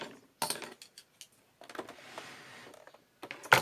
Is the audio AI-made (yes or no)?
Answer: no